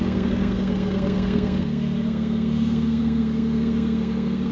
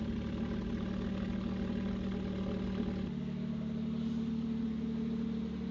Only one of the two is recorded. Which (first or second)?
second